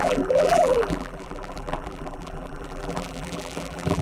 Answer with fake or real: fake